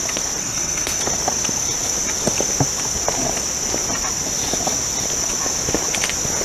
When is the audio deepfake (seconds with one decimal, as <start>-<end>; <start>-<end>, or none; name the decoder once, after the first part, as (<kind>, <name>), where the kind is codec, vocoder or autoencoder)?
0.4-1.0 (codec, SNAC)